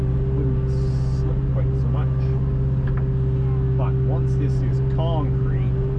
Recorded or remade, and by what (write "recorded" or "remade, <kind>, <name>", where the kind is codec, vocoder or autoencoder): recorded